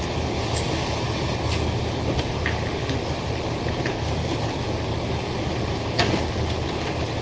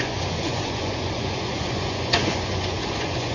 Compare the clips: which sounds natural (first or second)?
first